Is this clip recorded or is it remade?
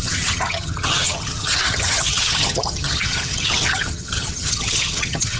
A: remade